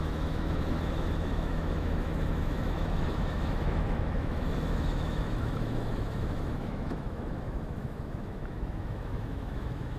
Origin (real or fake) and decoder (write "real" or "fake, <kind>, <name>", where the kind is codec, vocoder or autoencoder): fake, autoencoder, DAC-VAE